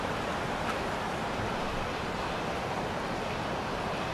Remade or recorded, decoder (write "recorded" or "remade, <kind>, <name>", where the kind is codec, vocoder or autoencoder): remade, vocoder, BigVGAN v2